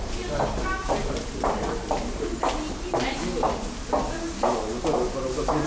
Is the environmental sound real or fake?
real